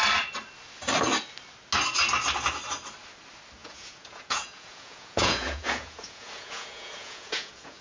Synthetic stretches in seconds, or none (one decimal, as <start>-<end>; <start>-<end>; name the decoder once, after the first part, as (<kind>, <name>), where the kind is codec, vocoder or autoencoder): 3.6-7.8 (vocoder, Vocos)